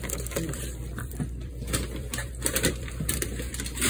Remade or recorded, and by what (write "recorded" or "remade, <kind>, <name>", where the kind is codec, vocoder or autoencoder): remade, vocoder, BigVGAN v2